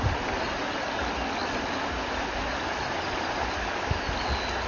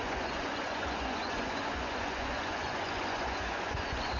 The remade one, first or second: second